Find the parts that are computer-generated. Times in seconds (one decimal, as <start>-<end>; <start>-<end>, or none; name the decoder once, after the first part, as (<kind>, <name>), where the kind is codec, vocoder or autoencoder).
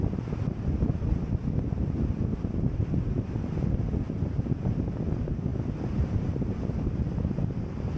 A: none